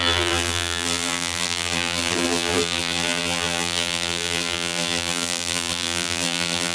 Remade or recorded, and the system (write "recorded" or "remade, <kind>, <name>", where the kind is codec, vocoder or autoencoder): remade, vocoder, BigVGAN v2